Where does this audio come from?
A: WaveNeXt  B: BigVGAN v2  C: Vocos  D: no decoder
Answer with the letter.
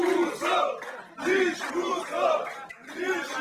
B